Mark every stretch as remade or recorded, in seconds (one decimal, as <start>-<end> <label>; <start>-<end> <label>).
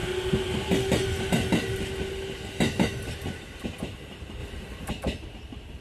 0.0-5.8 recorded